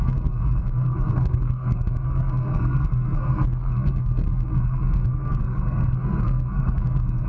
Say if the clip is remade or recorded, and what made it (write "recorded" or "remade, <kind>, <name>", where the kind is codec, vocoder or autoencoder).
remade, codec, SNAC